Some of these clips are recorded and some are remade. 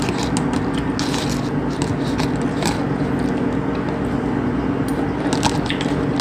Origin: recorded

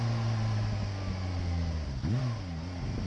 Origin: recorded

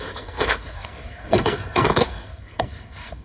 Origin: remade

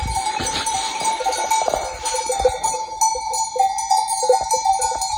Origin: recorded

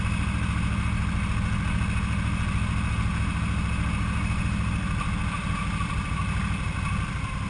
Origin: recorded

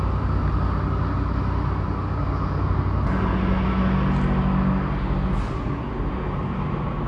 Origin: recorded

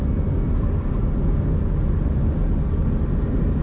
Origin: recorded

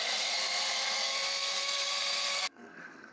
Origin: remade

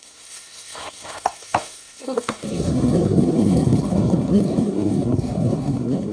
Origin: remade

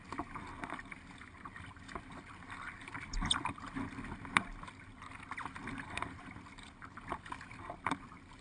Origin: recorded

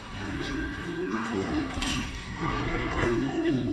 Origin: remade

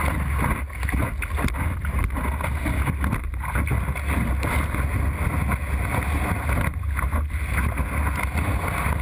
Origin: recorded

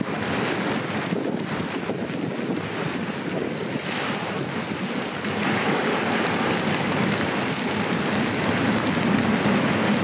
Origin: recorded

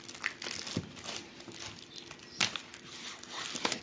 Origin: recorded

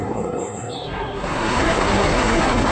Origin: remade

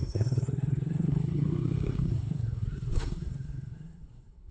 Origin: remade